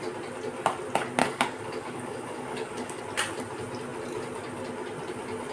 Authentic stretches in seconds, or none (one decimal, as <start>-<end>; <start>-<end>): 0.0-1.2; 3.0-5.5